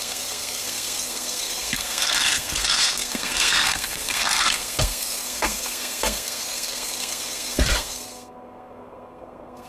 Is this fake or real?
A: fake